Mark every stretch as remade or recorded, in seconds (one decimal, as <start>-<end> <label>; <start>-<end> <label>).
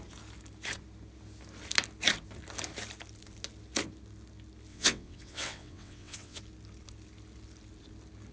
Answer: 0.0-4.7 recorded; 4.7-6.4 remade; 6.4-8.3 recorded